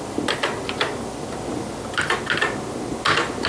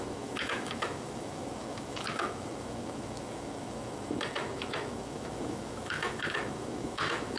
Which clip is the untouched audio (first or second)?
first